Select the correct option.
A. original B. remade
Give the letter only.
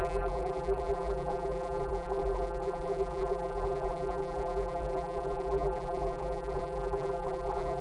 B